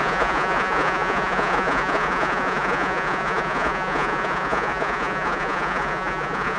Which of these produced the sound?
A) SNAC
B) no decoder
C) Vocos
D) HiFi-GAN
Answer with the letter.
C